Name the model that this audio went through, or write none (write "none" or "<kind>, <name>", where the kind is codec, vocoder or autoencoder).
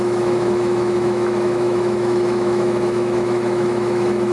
autoencoder, DAC-VAE